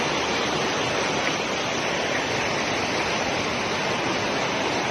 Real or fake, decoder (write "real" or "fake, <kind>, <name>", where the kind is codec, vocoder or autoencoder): real